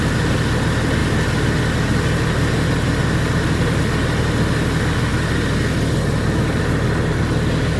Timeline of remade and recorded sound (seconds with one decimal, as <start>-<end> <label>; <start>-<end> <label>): 0.0-7.8 recorded